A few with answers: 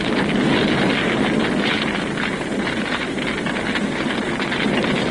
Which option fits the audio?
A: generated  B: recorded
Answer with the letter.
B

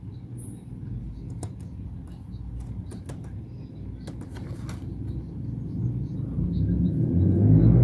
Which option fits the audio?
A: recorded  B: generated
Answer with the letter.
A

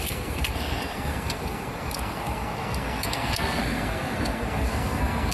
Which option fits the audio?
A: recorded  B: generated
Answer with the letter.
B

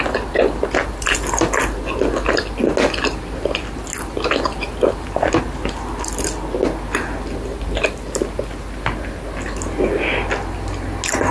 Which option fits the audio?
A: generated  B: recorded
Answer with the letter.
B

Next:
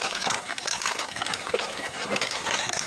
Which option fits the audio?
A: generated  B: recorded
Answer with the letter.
A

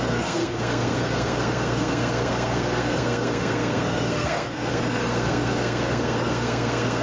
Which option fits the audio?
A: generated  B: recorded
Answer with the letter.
A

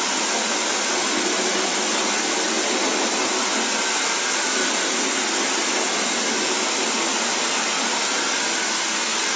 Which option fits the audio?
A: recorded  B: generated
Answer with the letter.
A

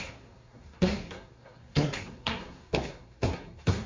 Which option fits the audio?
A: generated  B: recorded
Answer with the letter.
A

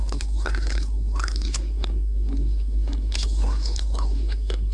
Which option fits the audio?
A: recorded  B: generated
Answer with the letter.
B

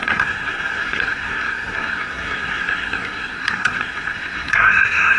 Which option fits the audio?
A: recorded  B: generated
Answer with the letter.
B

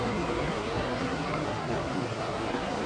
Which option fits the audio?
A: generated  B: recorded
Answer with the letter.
A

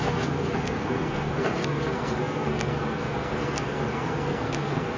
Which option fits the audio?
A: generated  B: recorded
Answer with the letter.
A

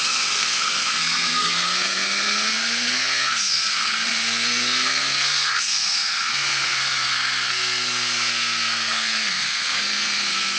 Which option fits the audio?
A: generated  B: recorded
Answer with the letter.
A